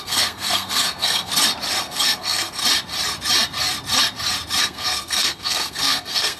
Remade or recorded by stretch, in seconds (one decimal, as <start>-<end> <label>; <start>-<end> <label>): 0.0-1.3 remade; 1.3-1.8 recorded; 1.8-2.6 remade; 2.6-4.6 recorded; 4.6-6.4 remade